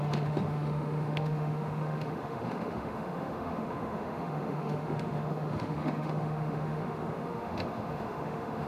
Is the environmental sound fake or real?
fake